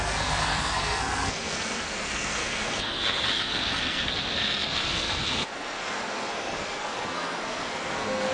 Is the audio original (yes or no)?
no